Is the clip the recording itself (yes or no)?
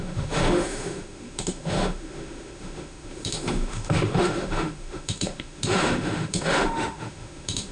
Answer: no